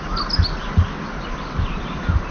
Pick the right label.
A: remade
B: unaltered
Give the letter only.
B